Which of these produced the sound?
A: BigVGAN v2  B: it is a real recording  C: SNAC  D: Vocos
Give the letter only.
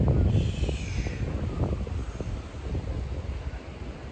B